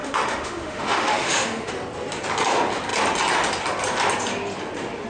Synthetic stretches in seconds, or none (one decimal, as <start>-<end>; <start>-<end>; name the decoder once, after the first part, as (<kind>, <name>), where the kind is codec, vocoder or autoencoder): 0.0-1.7 (autoencoder, DAC-VAE)